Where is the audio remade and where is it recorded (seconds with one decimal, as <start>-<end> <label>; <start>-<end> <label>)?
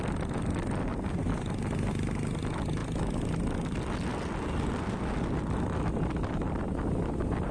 0.0-7.5 recorded